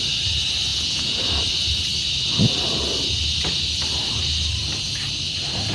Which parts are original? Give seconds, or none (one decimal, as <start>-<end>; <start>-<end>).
0.0-0.7; 1.2-5.7